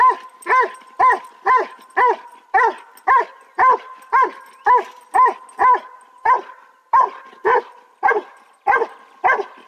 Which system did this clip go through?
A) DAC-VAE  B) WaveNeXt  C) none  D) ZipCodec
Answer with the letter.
C